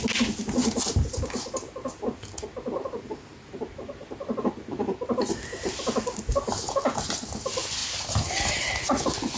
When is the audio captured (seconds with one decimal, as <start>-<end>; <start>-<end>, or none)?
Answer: 0.0-9.4

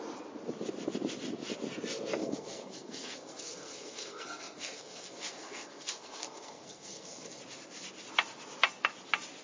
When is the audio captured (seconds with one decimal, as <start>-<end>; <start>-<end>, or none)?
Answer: 0.0-2.2; 7.4-9.4